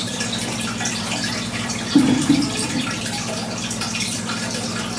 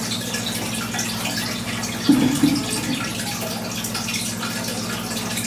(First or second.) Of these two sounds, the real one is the second